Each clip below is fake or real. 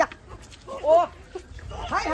real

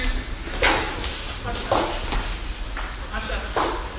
real